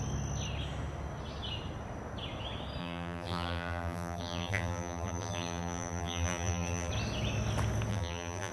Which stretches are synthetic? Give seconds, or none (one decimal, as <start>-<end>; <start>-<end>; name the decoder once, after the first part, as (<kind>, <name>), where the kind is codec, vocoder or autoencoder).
2.8-6.9 (vocoder, BigVGAN v2); 7.9-8.5